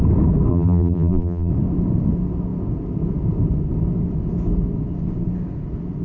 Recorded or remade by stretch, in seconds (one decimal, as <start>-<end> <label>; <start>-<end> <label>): 0.0-0.5 recorded; 0.5-1.5 remade; 1.5-6.0 recorded